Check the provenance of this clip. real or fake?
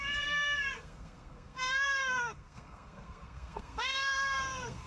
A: fake